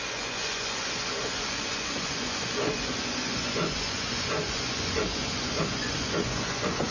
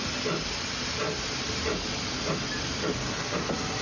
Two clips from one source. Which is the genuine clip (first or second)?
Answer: second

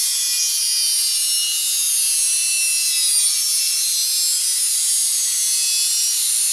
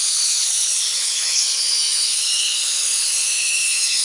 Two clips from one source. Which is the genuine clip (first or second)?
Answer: first